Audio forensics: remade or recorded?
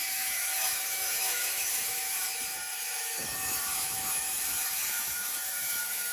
remade